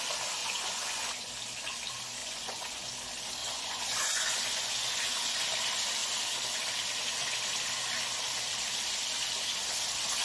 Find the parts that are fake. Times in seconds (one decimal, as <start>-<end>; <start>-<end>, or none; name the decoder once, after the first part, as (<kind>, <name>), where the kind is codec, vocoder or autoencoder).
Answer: 0.4-1.3 (vocoder, Vocos); 2.2-2.9; 3.4-5.4